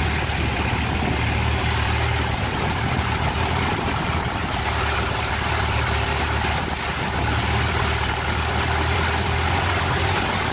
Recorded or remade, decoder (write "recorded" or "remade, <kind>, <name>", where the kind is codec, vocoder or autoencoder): remade, vocoder, BigVGAN v2